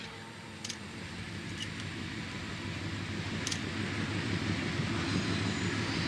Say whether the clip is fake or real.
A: fake